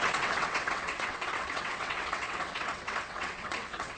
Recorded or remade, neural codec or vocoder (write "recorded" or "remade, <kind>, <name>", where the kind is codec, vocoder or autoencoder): remade, vocoder, WaveNeXt